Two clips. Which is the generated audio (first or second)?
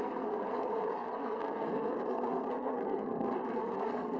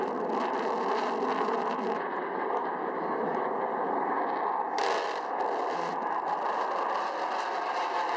first